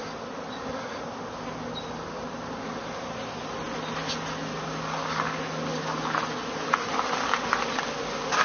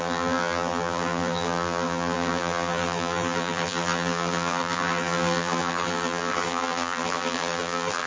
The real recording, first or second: first